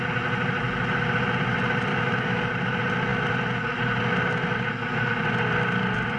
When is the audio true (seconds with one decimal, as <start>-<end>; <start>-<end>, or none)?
0.0-1.9; 2.5-6.2